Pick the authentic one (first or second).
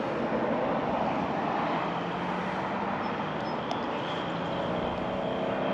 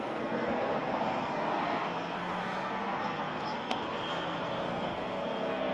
first